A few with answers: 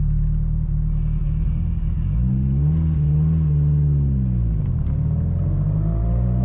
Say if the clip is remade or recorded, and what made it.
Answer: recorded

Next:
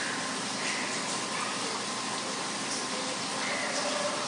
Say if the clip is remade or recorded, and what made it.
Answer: recorded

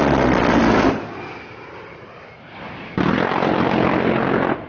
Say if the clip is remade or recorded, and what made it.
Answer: recorded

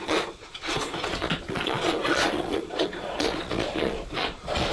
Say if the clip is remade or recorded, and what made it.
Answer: remade, vocoder, Vocos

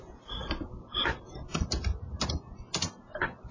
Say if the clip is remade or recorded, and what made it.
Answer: recorded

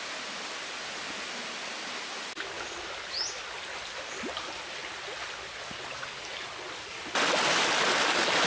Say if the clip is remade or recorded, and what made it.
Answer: recorded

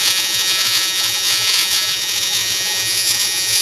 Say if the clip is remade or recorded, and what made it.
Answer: remade, vocoder, Vocos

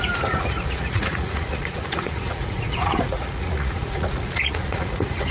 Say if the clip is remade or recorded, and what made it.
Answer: remade, vocoder, Vocos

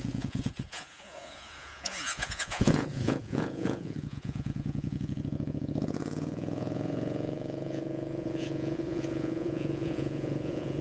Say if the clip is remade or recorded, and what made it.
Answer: remade, vocoder, Vocos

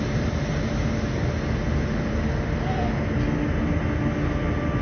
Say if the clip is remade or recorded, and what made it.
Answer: recorded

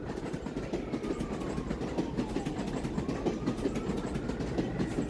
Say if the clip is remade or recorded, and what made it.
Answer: recorded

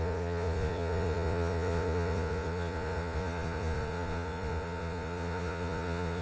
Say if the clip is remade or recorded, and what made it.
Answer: remade, vocoder, Vocos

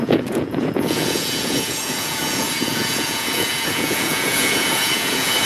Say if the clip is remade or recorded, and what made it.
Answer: remade, vocoder, Vocos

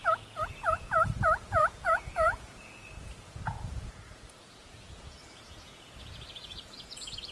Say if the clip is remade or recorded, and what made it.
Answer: remade, vocoder, Vocos